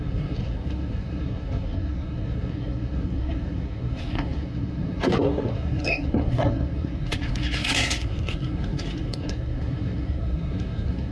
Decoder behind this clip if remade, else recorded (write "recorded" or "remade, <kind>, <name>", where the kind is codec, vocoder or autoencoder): remade, codec, SNAC